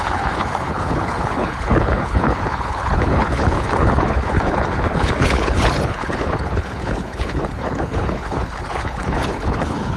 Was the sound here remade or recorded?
remade